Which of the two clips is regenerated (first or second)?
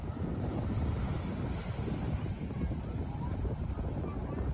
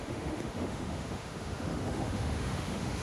second